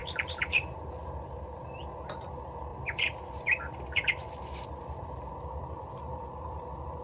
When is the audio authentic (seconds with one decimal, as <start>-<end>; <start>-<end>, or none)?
0.8-2.7; 5.3-7.0